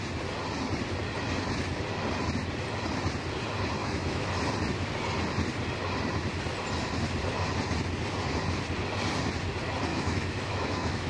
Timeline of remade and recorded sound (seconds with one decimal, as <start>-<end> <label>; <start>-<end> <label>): 0.0-3.8 recorded; 3.8-4.3 remade; 4.3-9.9 recorded; 9.9-11.1 remade